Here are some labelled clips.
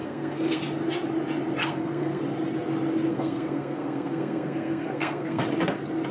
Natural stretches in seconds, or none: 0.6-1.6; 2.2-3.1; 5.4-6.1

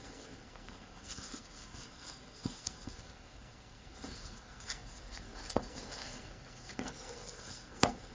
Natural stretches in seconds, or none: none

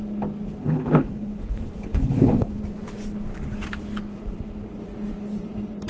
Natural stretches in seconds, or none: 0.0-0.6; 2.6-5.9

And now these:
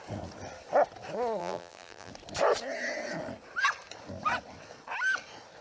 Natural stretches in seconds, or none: 0.0-1.4; 2.1-5.6

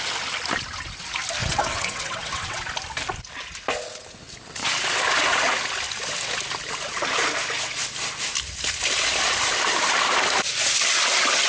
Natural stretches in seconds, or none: 0.0-1.4; 2.6-11.5